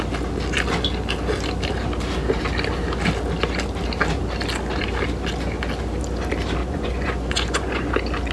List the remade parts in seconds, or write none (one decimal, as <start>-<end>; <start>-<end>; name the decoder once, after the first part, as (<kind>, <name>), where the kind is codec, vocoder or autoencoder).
6.6-7.9 (vocoder, Vocos)